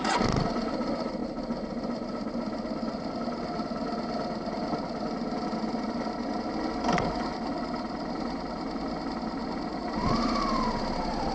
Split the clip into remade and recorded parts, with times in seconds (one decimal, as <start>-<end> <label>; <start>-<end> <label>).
0.0-11.3 recorded